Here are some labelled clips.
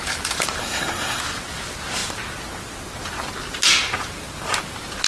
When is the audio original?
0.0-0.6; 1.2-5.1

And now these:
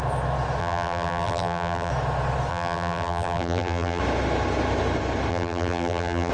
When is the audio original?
0.0-0.6; 1.9-2.5; 4.0-5.3

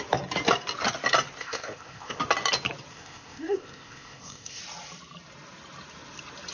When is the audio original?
0.0-1.4; 2.2-2.9; 4.6-6.5

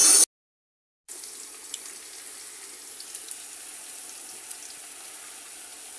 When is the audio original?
0.0-6.0

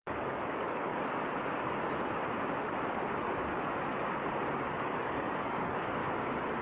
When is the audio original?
0.9-4.8; 6.0-6.6

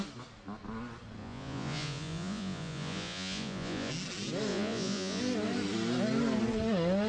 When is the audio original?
0.0-1.2; 3.9-4.5; 5.2-7.1